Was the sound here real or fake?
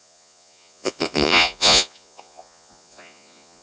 fake